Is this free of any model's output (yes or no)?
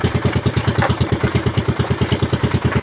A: yes